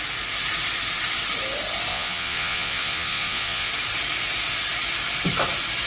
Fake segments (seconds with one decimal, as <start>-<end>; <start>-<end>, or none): 1.9-3.7